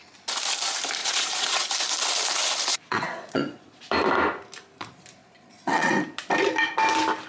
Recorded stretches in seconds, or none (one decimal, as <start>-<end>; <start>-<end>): 0.0-1.0; 1.7-2.7; 3.8-5.2; 5.9-7.3